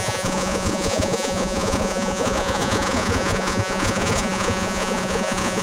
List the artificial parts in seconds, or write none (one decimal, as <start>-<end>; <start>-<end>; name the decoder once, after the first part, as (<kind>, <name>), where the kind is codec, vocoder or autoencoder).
0.0-5.6 (vocoder, Vocos)